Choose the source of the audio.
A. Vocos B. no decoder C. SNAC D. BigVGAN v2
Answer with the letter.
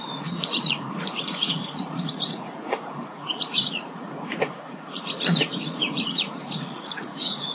A